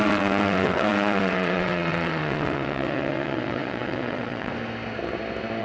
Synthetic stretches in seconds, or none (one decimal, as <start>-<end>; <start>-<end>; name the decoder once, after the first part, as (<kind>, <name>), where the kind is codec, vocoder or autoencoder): 0.0-4.5 (vocoder, WaveNeXt)